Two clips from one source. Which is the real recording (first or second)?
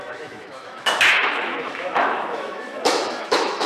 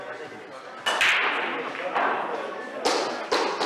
second